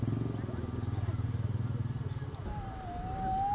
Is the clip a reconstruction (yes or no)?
no